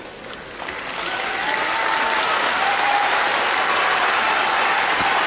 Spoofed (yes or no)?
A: no